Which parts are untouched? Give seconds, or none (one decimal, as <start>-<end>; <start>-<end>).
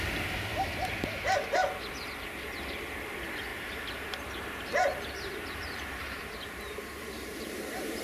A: 0.0-3.5